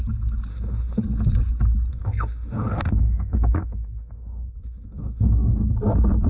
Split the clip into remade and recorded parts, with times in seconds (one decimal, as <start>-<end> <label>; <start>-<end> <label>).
0.0-0.5 recorded; 0.5-1.0 remade; 1.0-1.9 recorded; 1.9-5.6 remade; 5.6-6.3 recorded